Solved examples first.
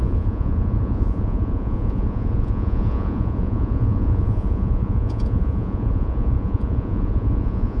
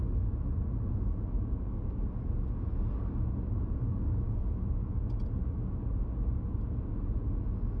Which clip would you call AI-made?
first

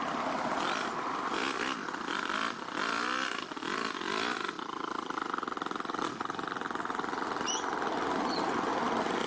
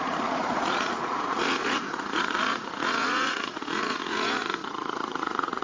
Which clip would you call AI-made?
second